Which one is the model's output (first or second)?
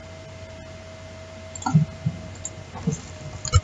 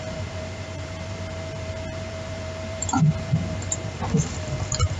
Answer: second